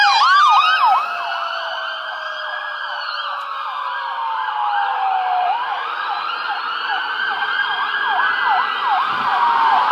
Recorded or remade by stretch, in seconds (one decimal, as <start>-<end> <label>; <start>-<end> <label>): 0.0-4.9 recorded; 4.9-5.6 remade; 5.6-6.6 recorded; 6.6-7.3 remade; 7.3-9.9 recorded